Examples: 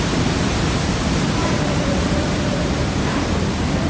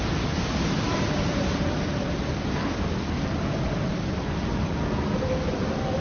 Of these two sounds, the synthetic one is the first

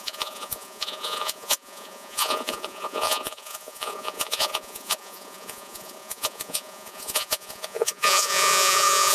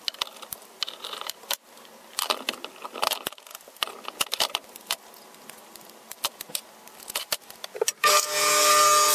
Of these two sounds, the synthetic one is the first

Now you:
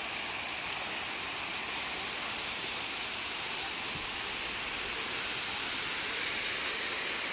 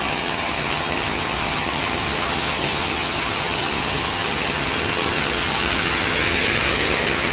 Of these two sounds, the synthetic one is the second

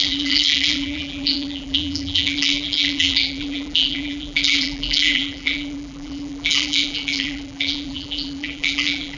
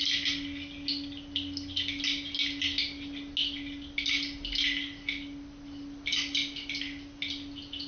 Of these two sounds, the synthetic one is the first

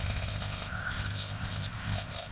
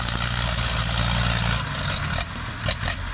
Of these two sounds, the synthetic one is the first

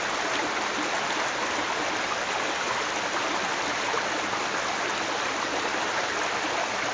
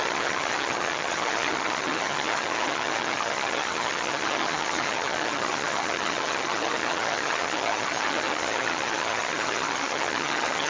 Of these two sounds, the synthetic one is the second